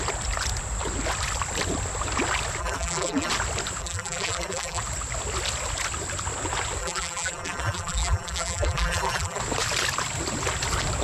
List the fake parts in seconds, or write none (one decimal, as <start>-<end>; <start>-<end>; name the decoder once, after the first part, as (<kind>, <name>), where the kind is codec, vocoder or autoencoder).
2.6-3.3 (vocoder, BigVGAN v2); 3.8-4.8; 6.8-9.4